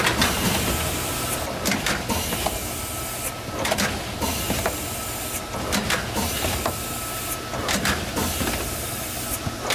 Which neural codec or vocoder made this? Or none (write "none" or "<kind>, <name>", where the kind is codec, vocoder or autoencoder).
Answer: none